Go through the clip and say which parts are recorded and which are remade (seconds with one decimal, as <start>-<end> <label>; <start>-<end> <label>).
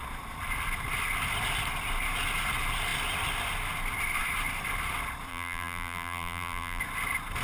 0.0-5.3 recorded; 5.3-6.8 remade; 6.8-7.4 recorded